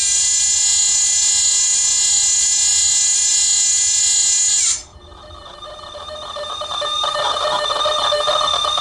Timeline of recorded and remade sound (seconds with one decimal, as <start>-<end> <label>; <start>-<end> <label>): 0.0-8.8 recorded